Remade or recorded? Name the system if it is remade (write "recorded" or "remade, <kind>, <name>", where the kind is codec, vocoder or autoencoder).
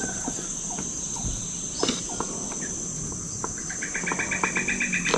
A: recorded